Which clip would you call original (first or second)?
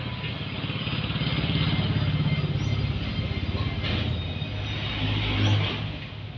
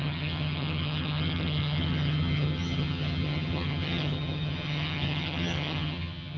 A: first